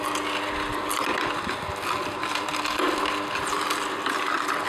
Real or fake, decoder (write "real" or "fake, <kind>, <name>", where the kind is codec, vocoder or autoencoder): real